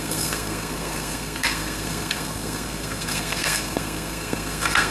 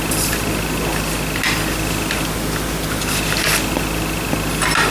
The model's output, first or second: first